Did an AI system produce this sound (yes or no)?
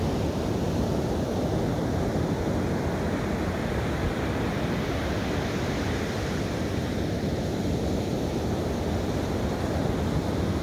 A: no